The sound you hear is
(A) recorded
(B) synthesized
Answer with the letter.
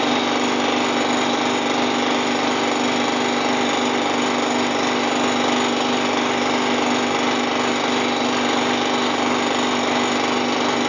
A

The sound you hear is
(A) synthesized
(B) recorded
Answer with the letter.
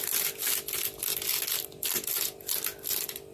B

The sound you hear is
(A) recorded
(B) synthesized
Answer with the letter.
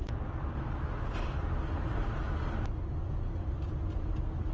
A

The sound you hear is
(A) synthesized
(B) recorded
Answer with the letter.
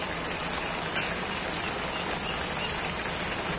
B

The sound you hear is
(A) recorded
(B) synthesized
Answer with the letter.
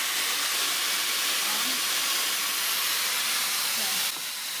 B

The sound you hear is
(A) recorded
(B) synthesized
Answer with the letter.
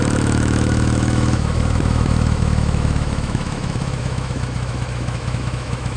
B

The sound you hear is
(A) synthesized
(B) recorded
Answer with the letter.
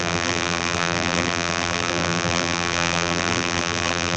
A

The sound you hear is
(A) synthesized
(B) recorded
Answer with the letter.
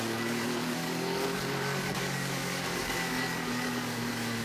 A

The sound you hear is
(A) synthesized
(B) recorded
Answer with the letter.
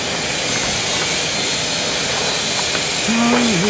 B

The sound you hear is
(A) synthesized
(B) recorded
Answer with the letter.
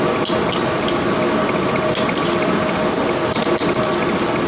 B